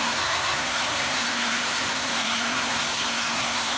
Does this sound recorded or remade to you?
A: remade